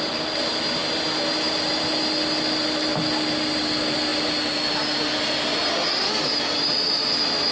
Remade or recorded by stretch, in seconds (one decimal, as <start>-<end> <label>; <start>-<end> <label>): 0.0-7.5 recorded